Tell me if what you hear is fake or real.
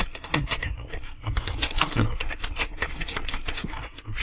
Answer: fake